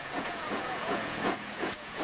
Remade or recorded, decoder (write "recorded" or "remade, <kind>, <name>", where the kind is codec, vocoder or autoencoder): remade, vocoder, Vocos